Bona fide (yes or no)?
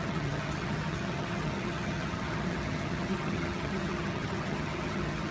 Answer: no